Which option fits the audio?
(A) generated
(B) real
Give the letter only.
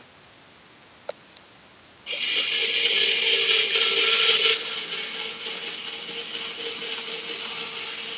B